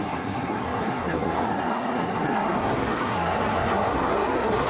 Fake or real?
fake